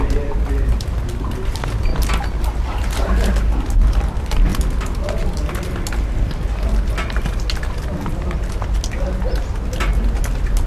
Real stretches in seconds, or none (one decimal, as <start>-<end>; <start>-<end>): 0.0-10.7